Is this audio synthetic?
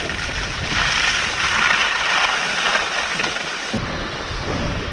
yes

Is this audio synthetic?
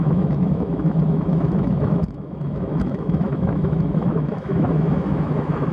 yes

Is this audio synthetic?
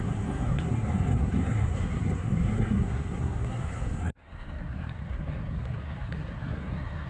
yes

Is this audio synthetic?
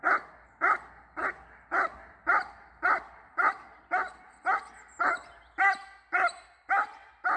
no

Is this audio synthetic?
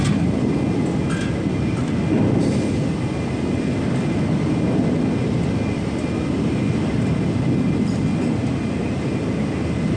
no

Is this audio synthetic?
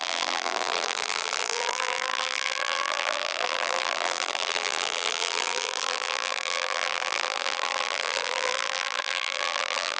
yes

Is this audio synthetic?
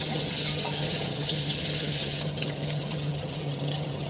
yes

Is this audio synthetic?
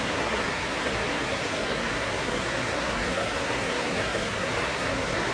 yes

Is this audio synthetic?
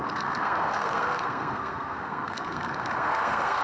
yes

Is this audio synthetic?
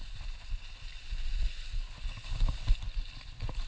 no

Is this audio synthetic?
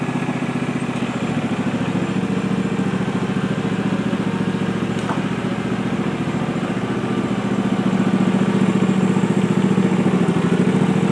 no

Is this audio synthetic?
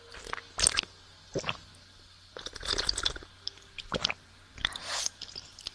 no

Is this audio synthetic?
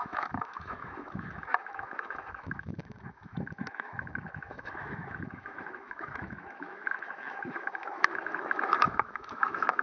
yes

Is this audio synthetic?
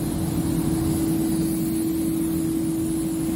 no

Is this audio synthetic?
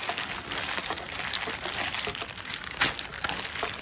no